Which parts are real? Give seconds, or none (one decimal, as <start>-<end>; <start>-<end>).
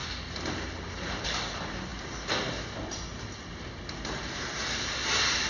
0.0-5.5